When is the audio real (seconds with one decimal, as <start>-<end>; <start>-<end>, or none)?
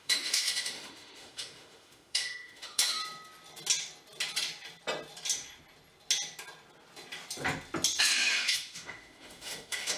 3.0-8.0